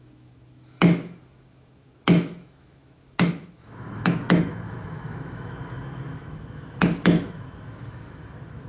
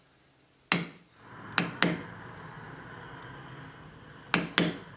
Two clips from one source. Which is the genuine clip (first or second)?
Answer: second